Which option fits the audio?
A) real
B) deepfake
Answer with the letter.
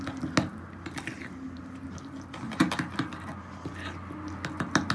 A